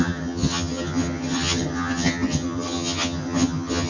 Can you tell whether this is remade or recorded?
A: remade